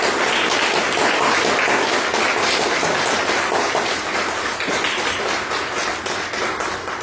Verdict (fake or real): real